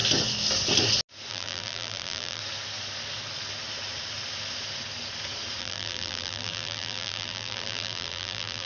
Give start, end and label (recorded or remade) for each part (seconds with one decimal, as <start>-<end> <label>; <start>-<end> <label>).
0.0-1.3 recorded; 1.3-2.4 remade; 2.4-5.6 recorded; 5.6-8.7 remade